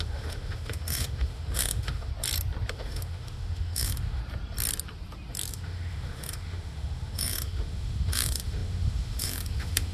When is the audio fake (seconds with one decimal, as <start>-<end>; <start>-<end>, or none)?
0.0-2.1; 2.7-4.2; 5.5-9.9

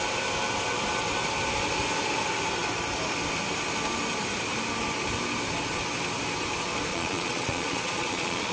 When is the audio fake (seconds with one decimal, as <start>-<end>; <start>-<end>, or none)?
6.9-8.5